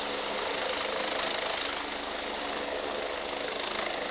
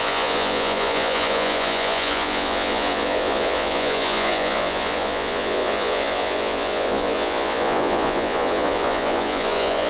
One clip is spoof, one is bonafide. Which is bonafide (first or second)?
first